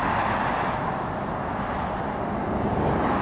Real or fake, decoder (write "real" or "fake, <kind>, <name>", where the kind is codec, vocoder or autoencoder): real